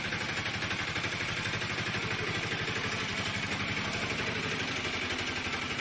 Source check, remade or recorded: recorded